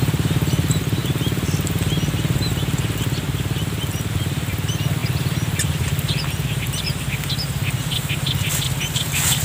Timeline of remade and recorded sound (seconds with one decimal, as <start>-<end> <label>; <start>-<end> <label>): 0.0-5.0 recorded; 5.0-6.8 remade; 6.8-9.4 recorded